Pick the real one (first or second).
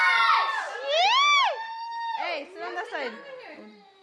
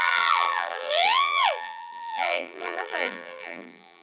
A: first